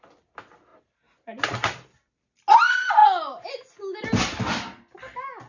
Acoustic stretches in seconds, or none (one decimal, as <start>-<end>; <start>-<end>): 0.0-5.5

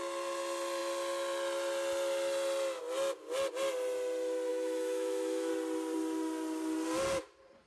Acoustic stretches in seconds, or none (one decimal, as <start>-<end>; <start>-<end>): 0.0-4.5; 5.5-7.7

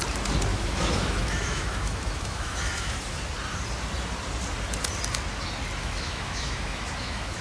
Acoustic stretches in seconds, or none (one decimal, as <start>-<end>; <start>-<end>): 0.0-0.5; 3.2-5.8

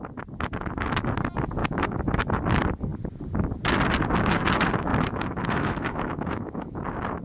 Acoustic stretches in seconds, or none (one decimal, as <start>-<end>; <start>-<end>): 0.0-1.6; 2.4-4.9; 6.8-7.2

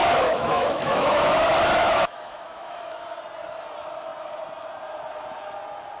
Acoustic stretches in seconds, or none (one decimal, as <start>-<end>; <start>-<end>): 1.3-1.8; 3.2-6.0

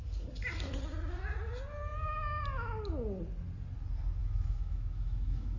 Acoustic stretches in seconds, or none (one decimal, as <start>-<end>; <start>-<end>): 0.0-4.2

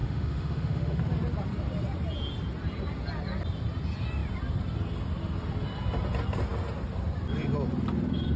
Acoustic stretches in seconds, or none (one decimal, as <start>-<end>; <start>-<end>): 1.0-8.4